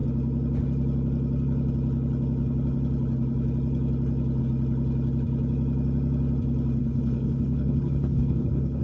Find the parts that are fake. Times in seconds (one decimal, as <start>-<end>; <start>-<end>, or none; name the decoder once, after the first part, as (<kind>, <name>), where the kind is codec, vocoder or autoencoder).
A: 6.8-8.8 (codec, HILCodec)